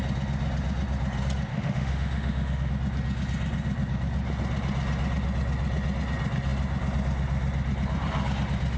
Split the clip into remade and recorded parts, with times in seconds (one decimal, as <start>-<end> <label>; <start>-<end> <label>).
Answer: 0.0-1.5 recorded; 1.5-2.7 remade; 2.7-8.8 recorded

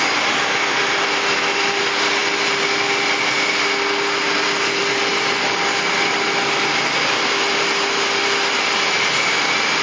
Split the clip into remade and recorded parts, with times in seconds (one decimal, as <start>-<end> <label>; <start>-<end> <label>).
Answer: 0.0-9.8 recorded

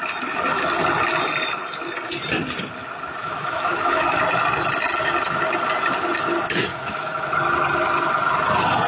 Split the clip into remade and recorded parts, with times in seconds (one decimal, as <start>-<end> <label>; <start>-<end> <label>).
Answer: 0.0-3.2 recorded; 3.2-4.2 remade; 4.2-6.7 recorded; 6.7-7.3 remade; 7.3-8.9 recorded